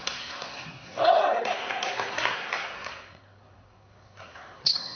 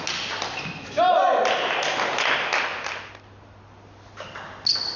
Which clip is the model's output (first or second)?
first